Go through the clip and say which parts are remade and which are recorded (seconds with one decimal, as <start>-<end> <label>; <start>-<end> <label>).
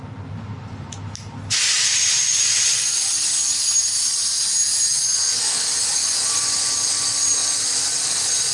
0.0-2.2 recorded; 2.2-3.1 remade; 3.1-6.0 recorded; 6.0-6.9 remade; 6.9-8.5 recorded